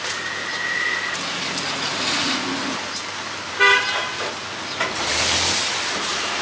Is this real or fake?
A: real